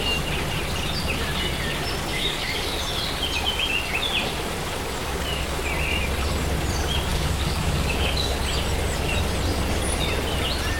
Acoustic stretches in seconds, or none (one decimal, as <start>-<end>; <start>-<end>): 0.0-2.1; 2.8-5.0; 5.6-7.1; 8.4-10.8